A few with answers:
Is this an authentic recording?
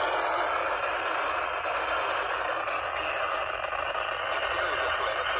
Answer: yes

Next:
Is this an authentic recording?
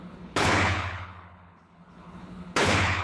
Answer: no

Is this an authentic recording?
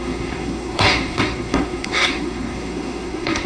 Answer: no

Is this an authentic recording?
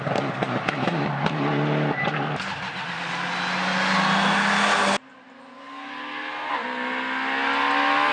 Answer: yes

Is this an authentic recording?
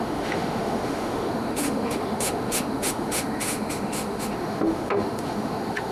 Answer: no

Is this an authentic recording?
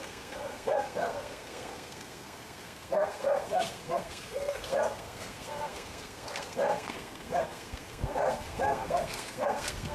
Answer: no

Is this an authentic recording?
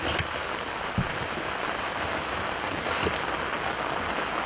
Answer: yes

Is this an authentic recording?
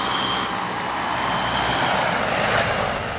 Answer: yes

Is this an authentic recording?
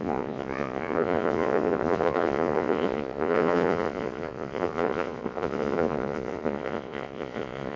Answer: no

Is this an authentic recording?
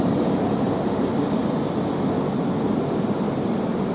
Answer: yes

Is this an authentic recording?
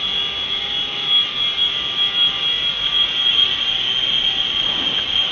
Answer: yes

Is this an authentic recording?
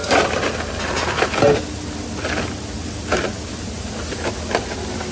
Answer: yes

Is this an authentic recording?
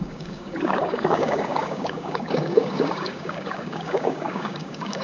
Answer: no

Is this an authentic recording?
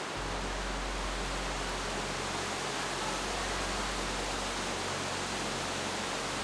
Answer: yes